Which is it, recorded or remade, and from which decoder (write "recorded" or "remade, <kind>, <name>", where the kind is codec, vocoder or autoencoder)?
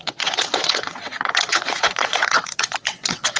remade, vocoder, WaveNeXt